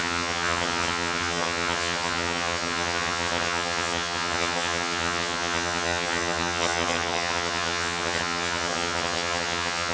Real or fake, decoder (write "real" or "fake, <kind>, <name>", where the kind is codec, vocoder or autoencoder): fake, vocoder, HiFi-GAN